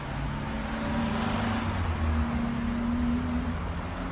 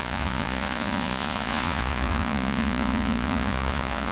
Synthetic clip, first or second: second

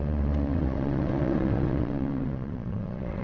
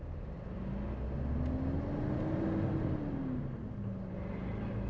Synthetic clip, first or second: first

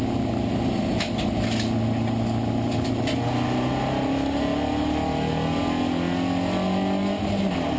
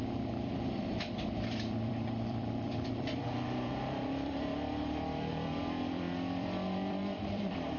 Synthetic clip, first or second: second